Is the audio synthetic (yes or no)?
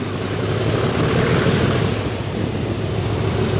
no